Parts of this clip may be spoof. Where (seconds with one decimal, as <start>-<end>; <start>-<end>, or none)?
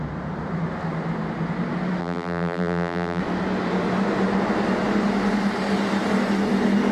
2.0-3.2